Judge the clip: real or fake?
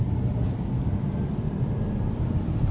fake